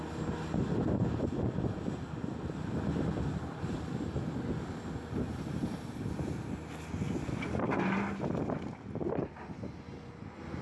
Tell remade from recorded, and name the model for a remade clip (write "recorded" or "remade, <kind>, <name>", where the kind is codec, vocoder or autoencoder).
recorded